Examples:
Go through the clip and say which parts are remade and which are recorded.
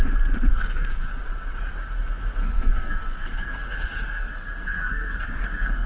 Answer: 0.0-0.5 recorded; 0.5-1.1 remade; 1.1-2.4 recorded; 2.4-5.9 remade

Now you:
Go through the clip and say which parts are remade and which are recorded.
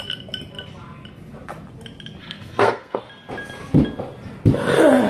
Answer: 0.0-2.2 recorded; 2.2-3.0 remade; 3.0-5.1 recorded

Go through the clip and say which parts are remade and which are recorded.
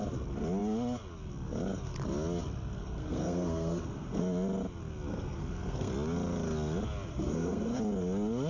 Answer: 0.0-2.8 recorded; 2.8-4.2 remade; 4.2-5.1 recorded; 5.1-5.9 remade; 5.9-7.1 recorded; 7.1-7.8 remade; 7.8-8.5 recorded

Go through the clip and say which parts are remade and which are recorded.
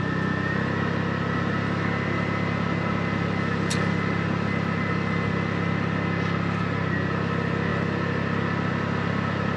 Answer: 0.0-9.6 recorded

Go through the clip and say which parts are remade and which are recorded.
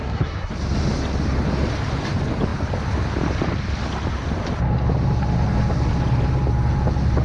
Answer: 0.0-0.5 remade; 0.5-7.2 recorded